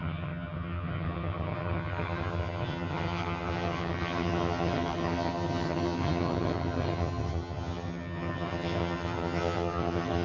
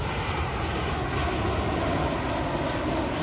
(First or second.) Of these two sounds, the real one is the second